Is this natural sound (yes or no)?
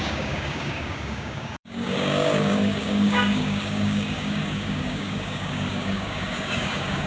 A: no